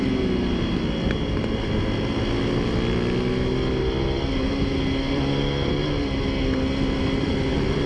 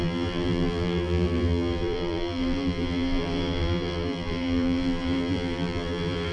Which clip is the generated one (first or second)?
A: second